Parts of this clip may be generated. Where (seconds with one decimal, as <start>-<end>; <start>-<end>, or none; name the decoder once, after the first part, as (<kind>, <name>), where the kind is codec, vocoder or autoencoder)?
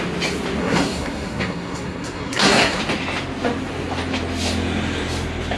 0.6-2.8 (codec, SNAC)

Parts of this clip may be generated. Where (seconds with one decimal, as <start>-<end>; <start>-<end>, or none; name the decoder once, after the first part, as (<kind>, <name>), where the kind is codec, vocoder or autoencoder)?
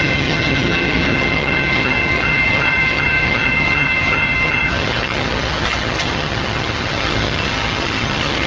0.0-8.5 (vocoder, HiFi-GAN)